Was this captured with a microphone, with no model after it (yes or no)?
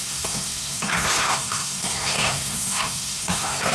no